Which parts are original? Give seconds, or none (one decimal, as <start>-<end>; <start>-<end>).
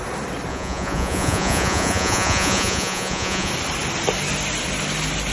0.0-0.5; 3.5-5.3